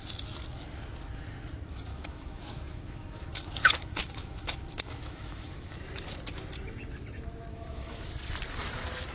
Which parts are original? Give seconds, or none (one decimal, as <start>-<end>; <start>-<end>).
0.0-1.9; 5.8-7.5; 8.0-9.1